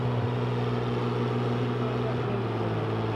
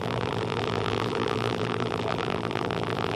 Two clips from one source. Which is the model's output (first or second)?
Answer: second